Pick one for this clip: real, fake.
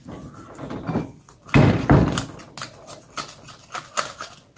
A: real